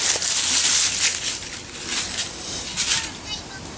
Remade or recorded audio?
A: recorded